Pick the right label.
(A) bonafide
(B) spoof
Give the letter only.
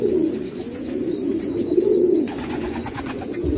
B